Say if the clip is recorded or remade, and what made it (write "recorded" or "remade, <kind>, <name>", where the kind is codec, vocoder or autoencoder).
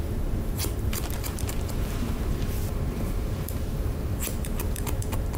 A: remade, vocoder, BigVGAN v2